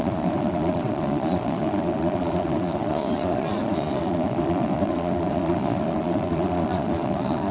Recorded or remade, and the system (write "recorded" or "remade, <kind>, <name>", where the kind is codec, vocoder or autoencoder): remade, vocoder, Vocos